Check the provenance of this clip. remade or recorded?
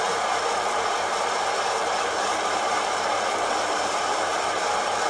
remade